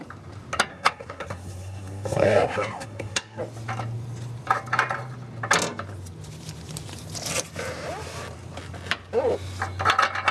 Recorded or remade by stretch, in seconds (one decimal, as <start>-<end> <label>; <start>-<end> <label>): 0.0-0.7 recorded; 0.7-3.4 remade; 3.4-10.3 recorded